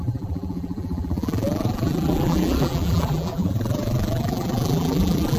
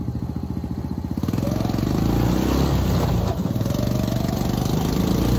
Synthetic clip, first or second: first